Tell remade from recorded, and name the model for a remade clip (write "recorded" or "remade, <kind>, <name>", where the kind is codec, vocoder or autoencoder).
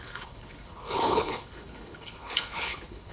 remade, codec, HILCodec